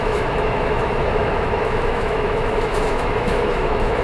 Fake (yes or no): yes